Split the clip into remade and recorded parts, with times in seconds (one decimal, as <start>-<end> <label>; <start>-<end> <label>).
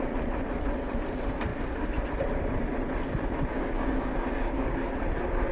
0.0-3.5 recorded; 3.5-4.9 remade; 4.9-5.5 recorded